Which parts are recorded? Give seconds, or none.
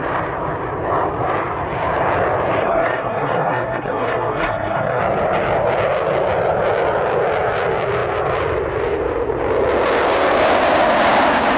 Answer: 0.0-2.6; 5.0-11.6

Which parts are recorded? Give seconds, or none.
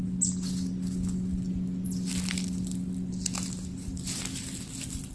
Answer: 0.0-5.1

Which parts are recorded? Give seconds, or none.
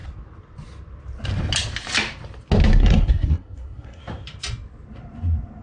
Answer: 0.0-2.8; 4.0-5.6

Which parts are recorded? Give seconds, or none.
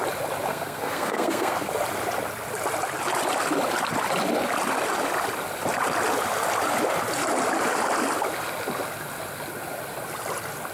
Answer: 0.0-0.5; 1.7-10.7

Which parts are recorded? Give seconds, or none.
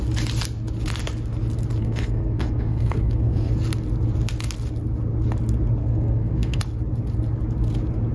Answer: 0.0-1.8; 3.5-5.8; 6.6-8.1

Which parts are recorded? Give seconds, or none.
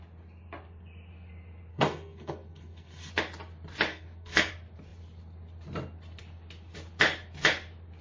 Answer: 0.0-1.7; 3.1-3.9; 4.5-8.0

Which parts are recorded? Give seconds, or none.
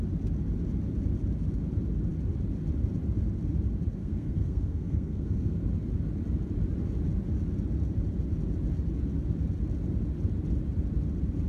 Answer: 0.0-4.0; 5.6-11.5